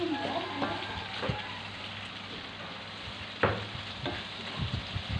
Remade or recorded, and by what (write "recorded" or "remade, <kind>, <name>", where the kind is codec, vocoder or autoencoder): recorded